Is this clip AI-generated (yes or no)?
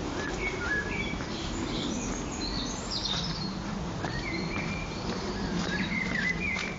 yes